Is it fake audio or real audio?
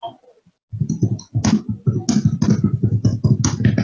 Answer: real